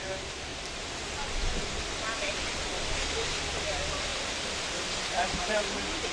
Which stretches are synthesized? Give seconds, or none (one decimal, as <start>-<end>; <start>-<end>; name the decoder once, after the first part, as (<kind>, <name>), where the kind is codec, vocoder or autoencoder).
0.5-1.9 (vocoder, BigVGAN v2); 4.1-6.1